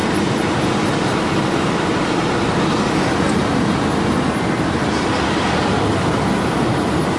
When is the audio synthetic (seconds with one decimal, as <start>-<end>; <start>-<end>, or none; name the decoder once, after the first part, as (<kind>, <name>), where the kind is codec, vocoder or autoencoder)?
none